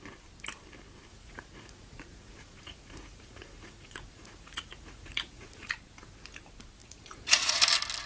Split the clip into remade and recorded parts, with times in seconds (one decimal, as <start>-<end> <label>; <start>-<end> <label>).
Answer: 0.0-1.1 recorded; 1.1-5.7 remade; 5.7-6.8 recorded; 6.8-7.6 remade; 7.6-8.1 recorded